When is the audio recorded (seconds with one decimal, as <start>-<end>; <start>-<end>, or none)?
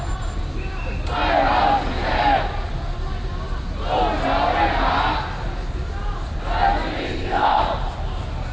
0.0-7.0; 7.6-8.5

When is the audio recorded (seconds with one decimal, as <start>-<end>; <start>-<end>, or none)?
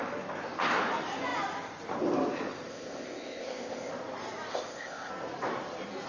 0.0-2.7; 3.9-4.5; 5.1-6.1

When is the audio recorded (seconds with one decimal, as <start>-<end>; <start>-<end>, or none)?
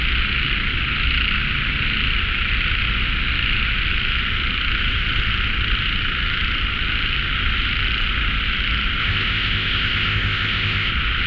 0.0-9.0; 10.9-11.3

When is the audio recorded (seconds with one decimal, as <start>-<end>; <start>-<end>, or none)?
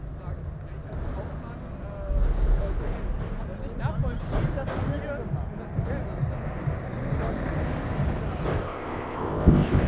0.0-8.6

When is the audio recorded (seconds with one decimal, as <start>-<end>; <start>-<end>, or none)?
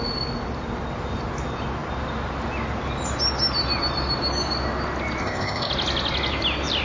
0.0-5.2; 5.7-6.8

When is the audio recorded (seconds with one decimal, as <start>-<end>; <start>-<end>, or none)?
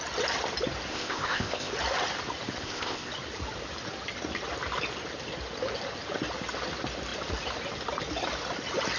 0.0-0.9; 1.7-2.6; 3.1-9.0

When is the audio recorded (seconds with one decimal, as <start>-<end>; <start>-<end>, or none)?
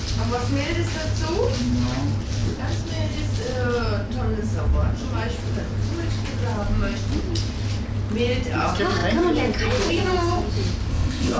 0.0-10.9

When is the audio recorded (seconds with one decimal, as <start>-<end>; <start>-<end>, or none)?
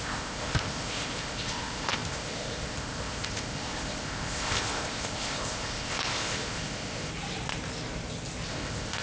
7.1-8.5